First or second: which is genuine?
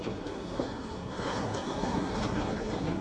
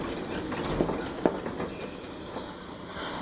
second